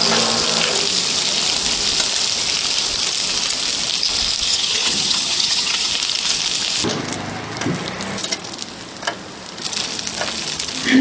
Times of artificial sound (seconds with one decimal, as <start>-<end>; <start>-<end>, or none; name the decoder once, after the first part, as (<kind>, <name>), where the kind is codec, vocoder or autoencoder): 4.5-5.9 (vocoder, HiFi-GAN)